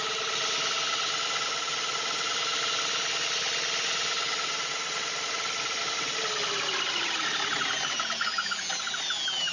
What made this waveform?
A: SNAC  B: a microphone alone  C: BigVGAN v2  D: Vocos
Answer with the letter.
B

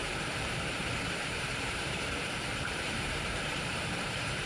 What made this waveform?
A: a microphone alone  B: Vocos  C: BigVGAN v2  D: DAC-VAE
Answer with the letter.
C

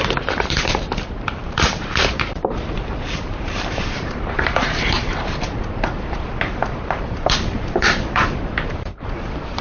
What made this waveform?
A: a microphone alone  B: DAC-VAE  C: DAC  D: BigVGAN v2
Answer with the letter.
D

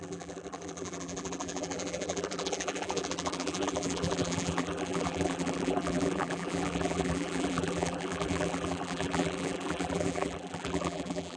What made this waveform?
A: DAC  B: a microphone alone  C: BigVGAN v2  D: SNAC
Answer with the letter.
C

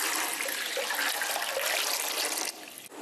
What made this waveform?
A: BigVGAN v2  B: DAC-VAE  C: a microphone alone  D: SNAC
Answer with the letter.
C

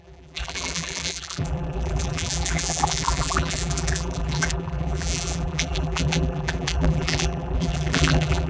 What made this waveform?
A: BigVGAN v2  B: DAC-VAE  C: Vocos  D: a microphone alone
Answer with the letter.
A